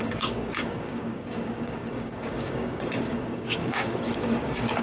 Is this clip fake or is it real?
fake